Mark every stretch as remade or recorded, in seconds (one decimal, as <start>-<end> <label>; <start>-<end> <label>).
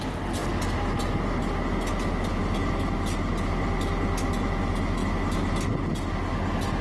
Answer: 0.0-6.8 recorded